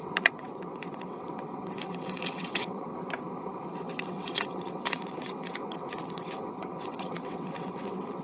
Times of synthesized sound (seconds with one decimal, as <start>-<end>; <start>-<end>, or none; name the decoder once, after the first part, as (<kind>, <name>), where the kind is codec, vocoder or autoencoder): 0.0-2.9 (vocoder, WaveNeXt); 3.7-8.2